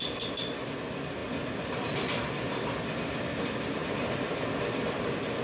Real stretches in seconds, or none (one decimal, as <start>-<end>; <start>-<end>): 0.0-5.4